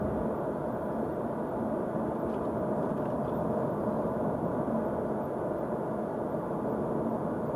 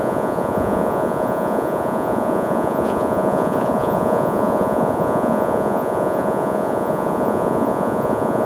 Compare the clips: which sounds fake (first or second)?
second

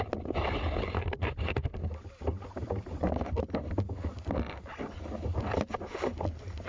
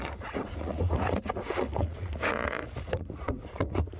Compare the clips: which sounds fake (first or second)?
second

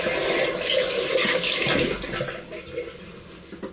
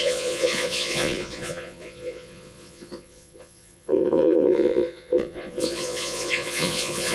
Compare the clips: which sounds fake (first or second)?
second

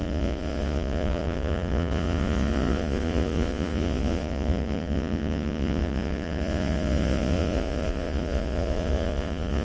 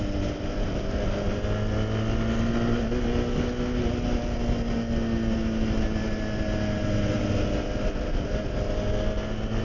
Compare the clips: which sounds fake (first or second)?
first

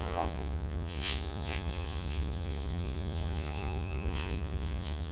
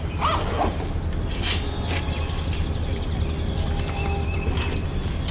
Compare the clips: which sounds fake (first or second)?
first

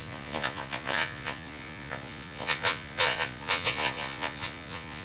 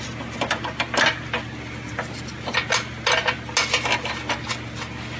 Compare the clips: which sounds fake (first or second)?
first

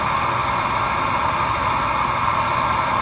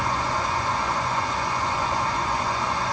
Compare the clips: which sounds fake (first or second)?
second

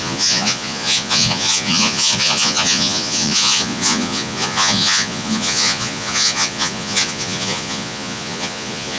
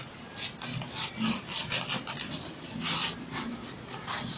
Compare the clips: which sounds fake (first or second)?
first